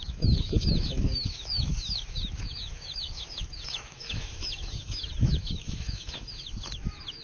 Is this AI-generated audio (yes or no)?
yes